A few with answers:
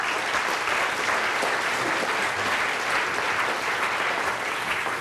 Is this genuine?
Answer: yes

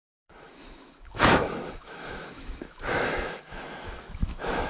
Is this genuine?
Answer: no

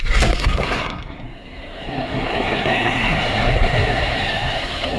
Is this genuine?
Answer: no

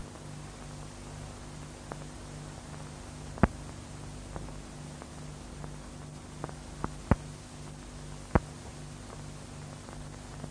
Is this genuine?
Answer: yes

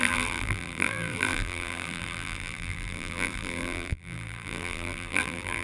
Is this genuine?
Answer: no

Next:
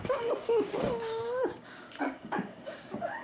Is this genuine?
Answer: no